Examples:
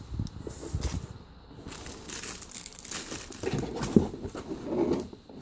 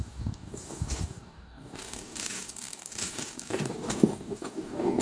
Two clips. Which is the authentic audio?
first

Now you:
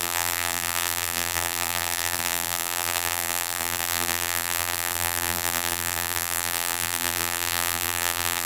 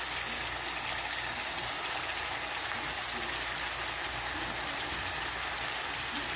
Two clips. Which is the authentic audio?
second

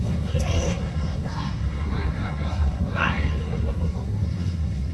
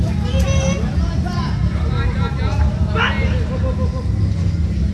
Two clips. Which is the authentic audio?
second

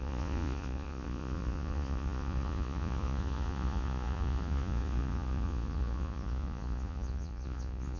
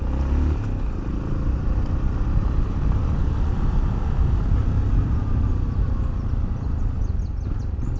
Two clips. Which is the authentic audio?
second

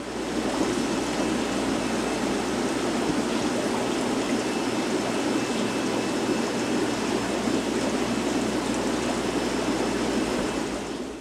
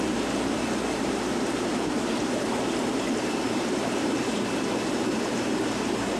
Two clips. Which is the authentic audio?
first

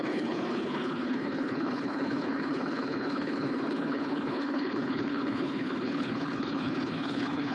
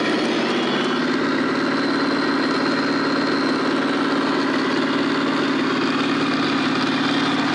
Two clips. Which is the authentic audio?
second